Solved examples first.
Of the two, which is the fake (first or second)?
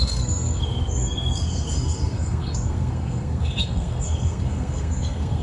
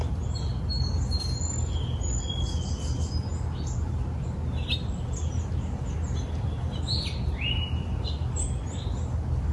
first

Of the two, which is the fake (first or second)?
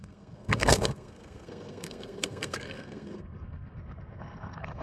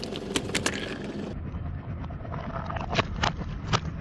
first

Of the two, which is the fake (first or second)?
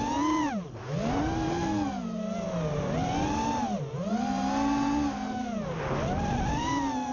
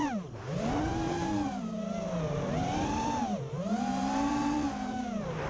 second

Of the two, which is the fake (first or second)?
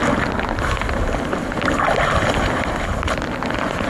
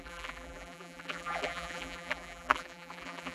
second